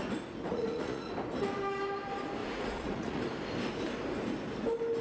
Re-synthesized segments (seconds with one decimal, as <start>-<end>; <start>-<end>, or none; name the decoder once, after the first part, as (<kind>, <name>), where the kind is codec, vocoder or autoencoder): 0.5-1.1 (vocoder, Vocos); 2.4-3.2